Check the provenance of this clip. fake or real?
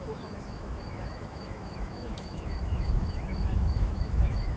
fake